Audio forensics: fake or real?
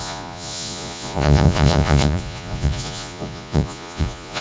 fake